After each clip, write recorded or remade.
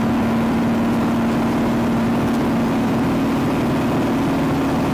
recorded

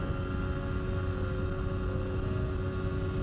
recorded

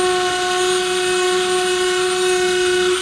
recorded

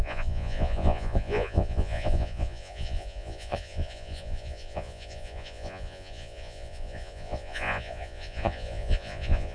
remade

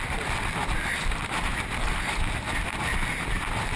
recorded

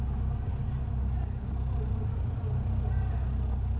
recorded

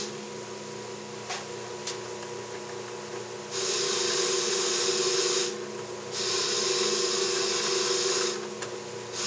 recorded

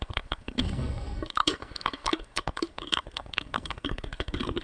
remade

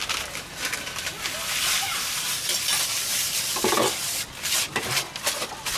recorded